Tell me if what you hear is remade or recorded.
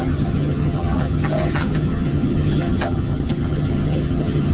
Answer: remade